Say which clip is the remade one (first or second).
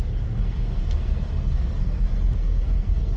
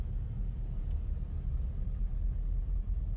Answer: first